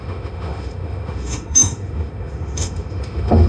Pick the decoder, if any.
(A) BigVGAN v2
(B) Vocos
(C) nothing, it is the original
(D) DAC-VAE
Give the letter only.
D